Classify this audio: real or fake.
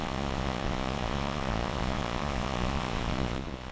fake